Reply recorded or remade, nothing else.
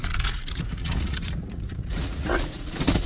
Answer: remade